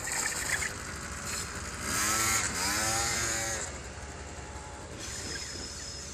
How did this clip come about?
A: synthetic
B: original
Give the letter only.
A